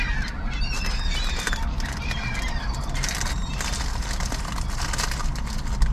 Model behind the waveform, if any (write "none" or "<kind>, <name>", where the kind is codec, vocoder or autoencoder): none